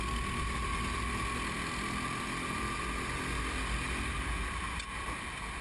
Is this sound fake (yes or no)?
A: no